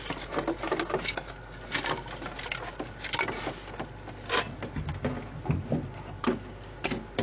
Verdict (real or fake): real